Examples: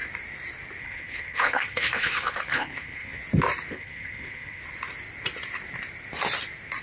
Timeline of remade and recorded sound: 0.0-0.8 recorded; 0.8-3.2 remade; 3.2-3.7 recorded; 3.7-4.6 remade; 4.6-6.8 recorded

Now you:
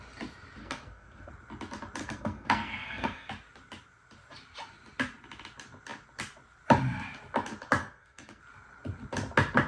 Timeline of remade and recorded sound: 0.0-0.6 recorded; 0.6-1.3 remade; 1.3-2.0 recorded; 2.0-3.3 remade; 3.3-7.8 recorded; 7.8-8.4 remade; 8.4-9.7 recorded

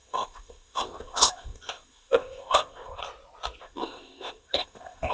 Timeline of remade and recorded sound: 0.0-3.0 remade; 3.0-3.6 recorded; 3.6-5.1 remade

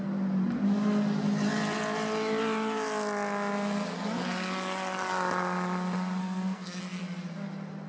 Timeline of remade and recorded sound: 0.0-6.2 recorded; 6.2-6.8 remade; 6.8-7.9 recorded

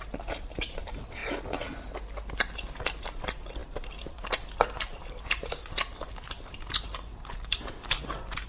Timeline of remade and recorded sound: 0.0-1.2 remade; 1.2-3.0 recorded; 3.0-8.5 remade

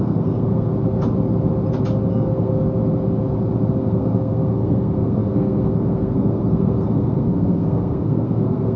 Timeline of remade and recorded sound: 0.0-0.7 remade; 0.7-2.1 recorded; 2.1-2.5 remade; 2.5-3.8 recorded; 3.8-8.8 remade

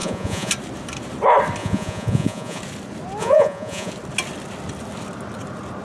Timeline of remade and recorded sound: 0.0-0.5 remade; 0.5-1.6 recorded; 1.6-2.6 remade; 2.6-3.2 recorded; 3.2-3.9 remade; 3.9-5.8 recorded